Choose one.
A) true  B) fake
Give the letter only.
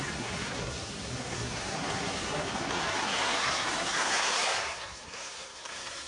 B